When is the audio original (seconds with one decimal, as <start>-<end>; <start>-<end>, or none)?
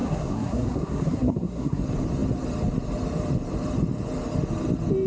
1.8-5.1